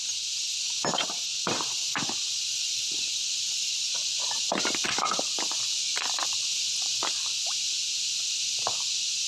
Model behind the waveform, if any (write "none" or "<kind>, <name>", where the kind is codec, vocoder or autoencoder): vocoder, BigVGAN v2